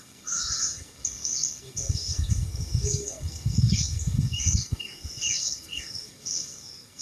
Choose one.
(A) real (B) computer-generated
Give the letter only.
B